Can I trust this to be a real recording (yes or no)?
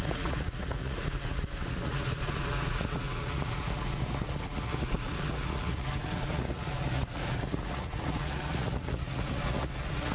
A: no